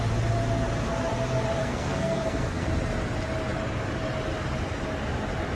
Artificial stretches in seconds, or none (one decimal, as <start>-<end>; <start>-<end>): 1.6-2.7